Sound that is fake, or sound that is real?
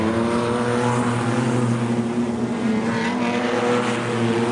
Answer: real